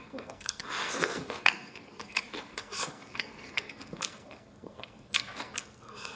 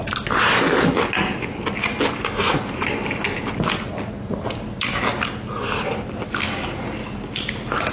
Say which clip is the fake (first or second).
first